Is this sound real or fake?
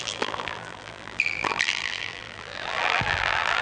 fake